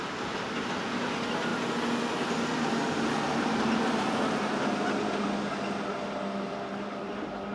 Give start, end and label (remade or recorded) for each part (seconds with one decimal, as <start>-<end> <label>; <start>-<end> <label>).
0.0-7.5 recorded